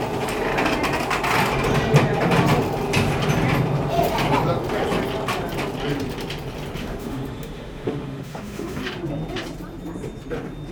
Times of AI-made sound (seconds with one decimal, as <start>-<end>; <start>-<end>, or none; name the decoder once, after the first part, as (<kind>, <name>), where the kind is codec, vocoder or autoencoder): 6.8-8.8 (autoencoder, DAC-VAE)